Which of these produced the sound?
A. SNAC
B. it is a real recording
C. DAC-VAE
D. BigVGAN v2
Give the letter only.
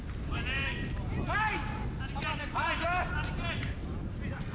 B